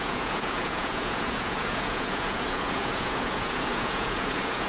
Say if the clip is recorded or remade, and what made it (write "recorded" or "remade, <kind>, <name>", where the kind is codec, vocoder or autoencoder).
remade, vocoder, Vocos